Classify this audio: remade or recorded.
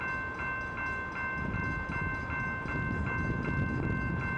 recorded